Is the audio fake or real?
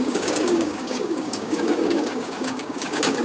fake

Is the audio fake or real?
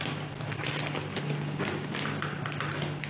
real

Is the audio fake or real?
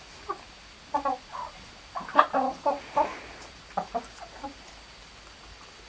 real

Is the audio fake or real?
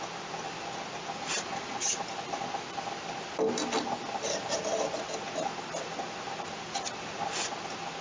real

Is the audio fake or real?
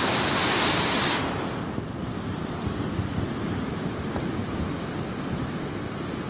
real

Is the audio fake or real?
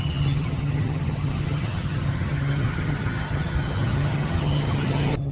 fake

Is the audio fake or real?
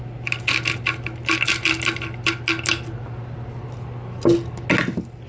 real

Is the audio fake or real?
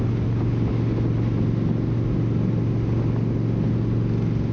real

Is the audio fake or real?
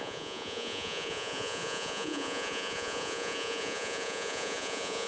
fake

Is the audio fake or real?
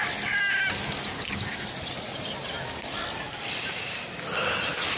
real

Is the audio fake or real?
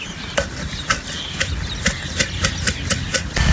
real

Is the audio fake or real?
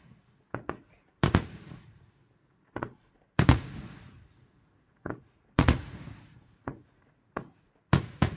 fake